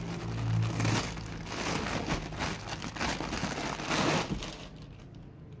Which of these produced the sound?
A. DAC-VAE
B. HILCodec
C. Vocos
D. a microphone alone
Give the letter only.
D